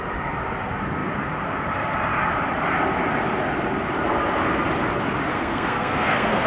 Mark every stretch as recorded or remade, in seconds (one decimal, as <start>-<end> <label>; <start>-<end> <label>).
0.0-5.3 recorded; 5.3-6.5 remade